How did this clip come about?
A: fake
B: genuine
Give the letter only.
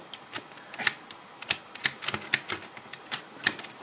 B